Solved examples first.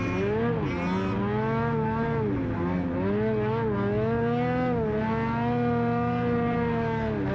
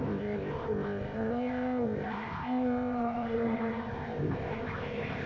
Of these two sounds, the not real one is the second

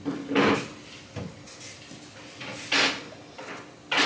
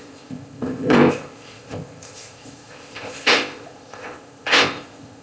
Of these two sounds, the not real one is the second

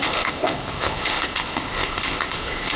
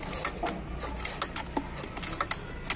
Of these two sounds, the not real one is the first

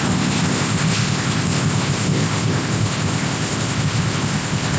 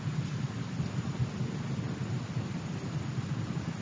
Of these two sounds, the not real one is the first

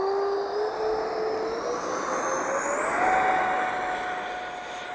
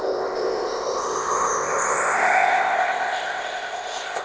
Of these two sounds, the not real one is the second